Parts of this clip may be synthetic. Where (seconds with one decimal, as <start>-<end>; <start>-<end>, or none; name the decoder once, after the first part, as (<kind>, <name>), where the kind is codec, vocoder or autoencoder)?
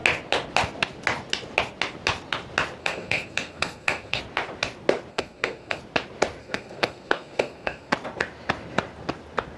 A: 2.8-4.2 (codec, SNAC); 5.1-5.8; 6.4-7.9